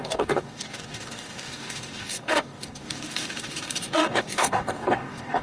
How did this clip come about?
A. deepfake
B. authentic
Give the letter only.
A